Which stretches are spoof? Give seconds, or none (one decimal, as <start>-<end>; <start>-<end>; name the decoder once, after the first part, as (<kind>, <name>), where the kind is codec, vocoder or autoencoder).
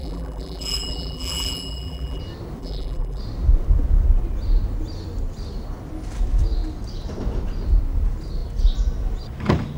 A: 0.0-2.2 (vocoder, BigVGAN v2); 2.6-3.2